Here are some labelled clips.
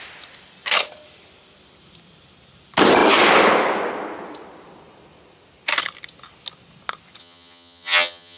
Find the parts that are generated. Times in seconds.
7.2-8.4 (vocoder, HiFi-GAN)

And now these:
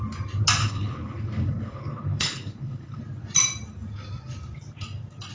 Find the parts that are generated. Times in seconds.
0.6-3.0 (codec, HILCodec)

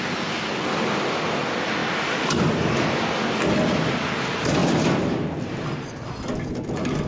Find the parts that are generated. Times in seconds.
none

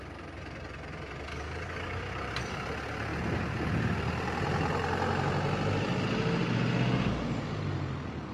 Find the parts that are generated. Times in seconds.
1.3-2.0 (codec, DAC)